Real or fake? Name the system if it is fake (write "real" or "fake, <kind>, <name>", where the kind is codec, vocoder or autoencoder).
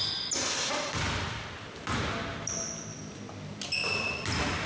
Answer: real